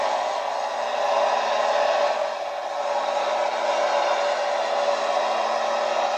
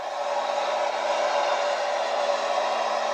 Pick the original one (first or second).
first